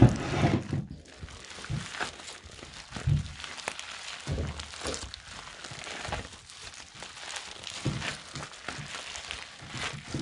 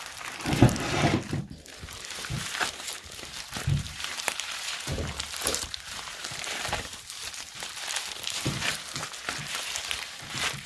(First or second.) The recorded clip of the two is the first